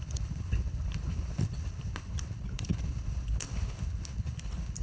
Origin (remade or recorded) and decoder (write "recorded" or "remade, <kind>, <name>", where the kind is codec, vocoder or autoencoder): remade, codec, HILCodec